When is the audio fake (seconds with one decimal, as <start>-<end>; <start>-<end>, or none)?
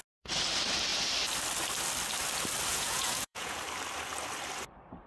2.7-3.6